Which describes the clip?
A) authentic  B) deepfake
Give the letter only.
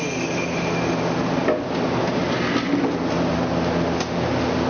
A